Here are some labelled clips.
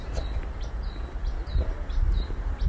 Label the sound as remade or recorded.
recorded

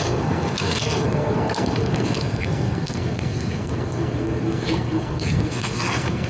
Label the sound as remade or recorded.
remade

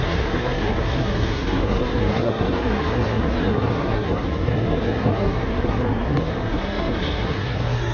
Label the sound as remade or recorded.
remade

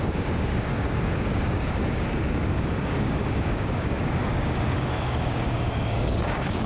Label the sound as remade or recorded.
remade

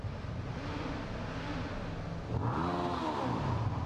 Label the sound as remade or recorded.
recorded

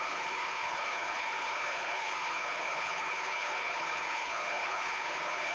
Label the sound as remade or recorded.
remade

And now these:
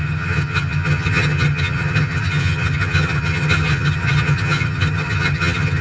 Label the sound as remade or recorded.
remade